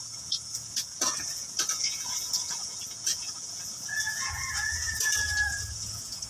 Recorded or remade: remade